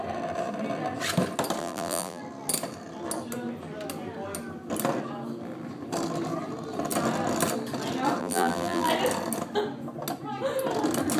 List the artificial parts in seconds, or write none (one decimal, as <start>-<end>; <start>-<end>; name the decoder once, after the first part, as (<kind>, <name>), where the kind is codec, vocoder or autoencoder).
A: 1.6-2.2 (vocoder, BigVGAN v2); 8.2-8.9

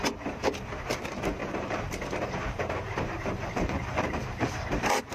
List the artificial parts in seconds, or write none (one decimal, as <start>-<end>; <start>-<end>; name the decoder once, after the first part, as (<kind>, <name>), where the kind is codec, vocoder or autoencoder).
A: 1.4-4.5 (vocoder, BigVGAN v2)

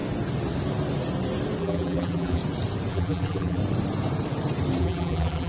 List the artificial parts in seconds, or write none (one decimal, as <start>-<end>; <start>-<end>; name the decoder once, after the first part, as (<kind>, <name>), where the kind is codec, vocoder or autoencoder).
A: 1.6-2.4 (vocoder, BigVGAN v2); 2.9-3.6; 4.8-5.5

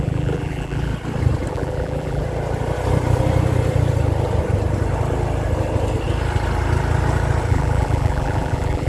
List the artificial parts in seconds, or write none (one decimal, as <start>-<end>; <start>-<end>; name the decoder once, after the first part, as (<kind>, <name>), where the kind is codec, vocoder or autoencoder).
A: 0.0-0.9 (vocoder, BigVGAN v2); 1.5-2.2; 7.5-8.9